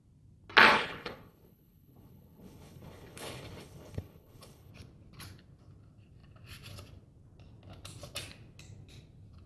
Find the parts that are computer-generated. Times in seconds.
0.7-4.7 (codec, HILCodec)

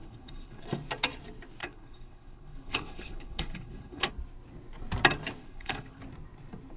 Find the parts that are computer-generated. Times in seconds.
0.0-0.6 (codec, HILCodec); 1.6-4.1; 5.4-6.0

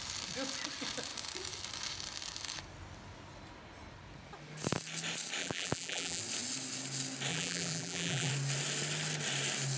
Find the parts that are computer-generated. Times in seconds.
5.4-6.2 (vocoder, BigVGAN v2); 7.3-8.3

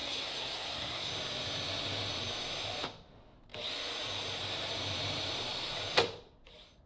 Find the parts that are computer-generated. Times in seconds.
0.0-1.1 (codec, SNAC)

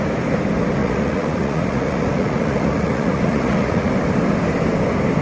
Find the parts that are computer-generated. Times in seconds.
0.8-3.9 (vocoder, Vocos)

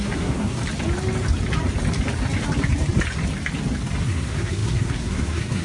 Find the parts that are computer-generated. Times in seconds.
0.0-0.6 (codec, SNAC); 4.0-5.6

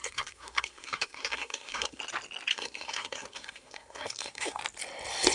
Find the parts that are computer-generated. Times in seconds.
0.0-2.0 (codec, SNAC); 2.5-4.6